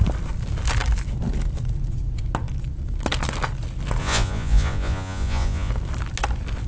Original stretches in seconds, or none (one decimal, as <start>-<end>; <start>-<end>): 0.0-4.0; 5.7-6.7